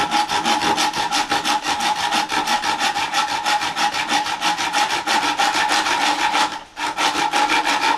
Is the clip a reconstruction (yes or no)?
no